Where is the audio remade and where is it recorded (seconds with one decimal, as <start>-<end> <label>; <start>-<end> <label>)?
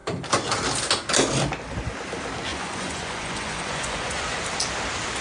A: 0.0-2.5 recorded; 2.5-4.4 remade; 4.4-5.2 recorded